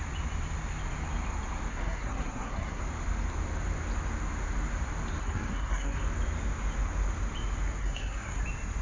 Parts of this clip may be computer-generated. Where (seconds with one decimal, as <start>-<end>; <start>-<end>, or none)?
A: 1.7-2.8; 5.2-6.0; 7.8-8.4